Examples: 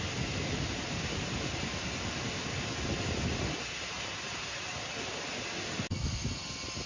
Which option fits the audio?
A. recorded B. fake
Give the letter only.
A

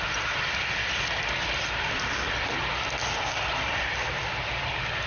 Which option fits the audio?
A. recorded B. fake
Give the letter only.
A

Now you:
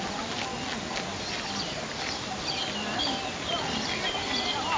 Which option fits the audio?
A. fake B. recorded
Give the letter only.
B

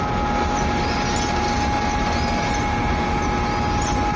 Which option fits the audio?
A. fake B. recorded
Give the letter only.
B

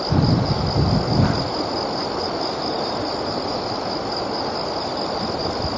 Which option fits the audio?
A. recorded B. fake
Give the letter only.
A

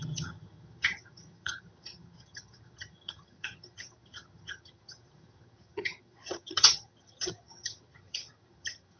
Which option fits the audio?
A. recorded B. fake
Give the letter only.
B